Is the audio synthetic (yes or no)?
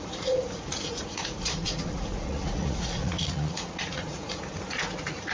yes